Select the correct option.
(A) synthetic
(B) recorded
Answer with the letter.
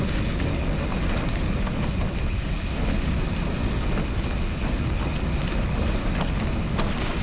B